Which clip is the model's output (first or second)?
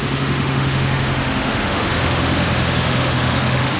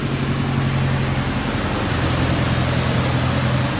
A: first